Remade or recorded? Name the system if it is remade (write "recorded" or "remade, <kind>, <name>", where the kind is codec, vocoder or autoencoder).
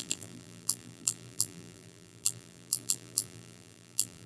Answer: remade, vocoder, BigVGAN v2